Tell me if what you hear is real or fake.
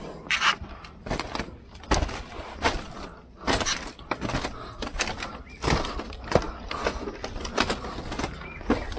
real